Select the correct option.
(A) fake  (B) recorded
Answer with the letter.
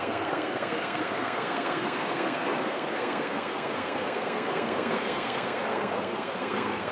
A